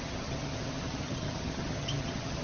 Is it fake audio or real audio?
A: fake